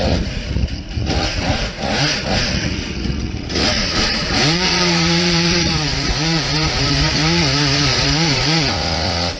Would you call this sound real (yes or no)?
no